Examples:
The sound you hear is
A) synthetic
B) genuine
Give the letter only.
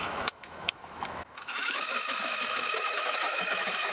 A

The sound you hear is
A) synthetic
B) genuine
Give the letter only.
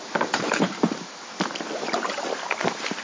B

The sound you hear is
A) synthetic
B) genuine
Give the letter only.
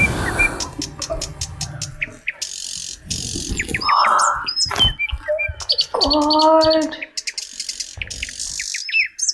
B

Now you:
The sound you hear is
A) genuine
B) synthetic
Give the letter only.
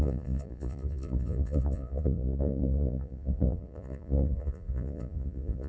B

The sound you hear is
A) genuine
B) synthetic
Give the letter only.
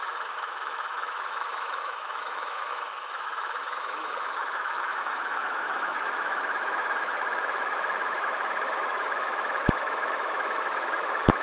B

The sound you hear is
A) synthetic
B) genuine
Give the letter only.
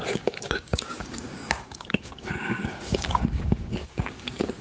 A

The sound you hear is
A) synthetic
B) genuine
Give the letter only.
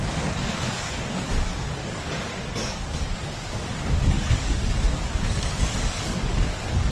A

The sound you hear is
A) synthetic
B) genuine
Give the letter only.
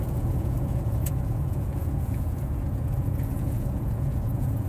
A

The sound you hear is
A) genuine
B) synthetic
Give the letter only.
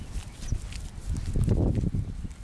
A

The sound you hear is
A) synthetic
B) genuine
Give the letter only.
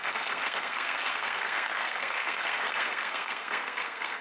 A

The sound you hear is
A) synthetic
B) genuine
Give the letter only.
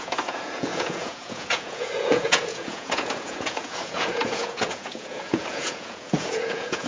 A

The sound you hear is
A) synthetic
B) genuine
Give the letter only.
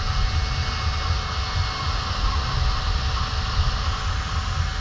B